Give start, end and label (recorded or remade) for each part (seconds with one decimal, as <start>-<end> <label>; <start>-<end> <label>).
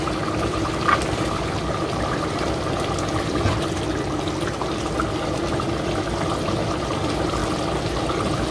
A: 0.0-7.4 remade; 7.4-8.5 recorded